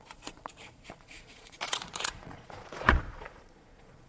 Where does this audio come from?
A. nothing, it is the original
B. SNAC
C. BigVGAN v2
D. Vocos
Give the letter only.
D